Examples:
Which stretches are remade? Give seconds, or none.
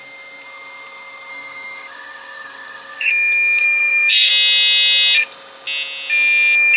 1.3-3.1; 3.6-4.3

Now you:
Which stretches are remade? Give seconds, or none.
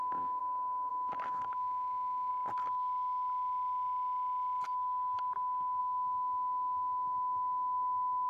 0.0-0.4; 0.9-2.3; 5.8-8.3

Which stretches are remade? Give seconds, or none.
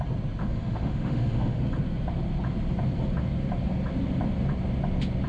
0.4-1.6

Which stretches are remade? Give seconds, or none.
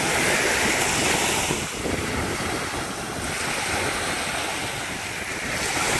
none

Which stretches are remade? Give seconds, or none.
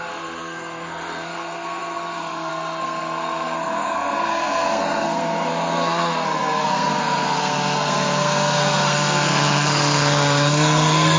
0.0-11.2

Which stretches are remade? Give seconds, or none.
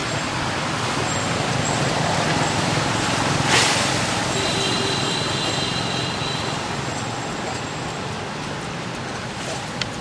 none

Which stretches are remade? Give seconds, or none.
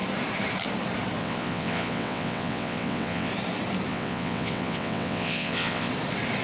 1.2-3.3; 3.9-5.9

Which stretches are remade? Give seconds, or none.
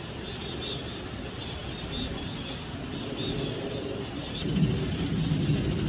none